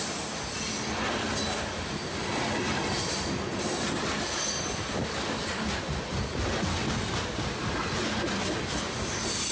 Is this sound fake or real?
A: real